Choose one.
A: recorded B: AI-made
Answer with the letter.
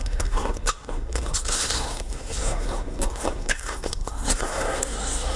B